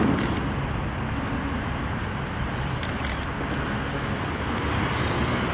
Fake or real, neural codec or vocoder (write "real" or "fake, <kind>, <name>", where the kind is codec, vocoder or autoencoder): real